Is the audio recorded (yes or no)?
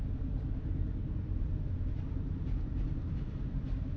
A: yes